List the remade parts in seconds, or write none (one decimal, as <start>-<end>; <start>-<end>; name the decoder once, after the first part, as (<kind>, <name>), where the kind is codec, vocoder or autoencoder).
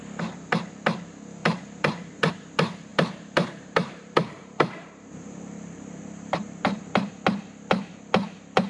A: 1.4-2.3 (vocoder, BigVGAN v2); 2.9-7.1